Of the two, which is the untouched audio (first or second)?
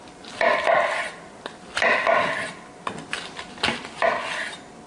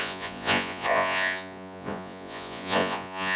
first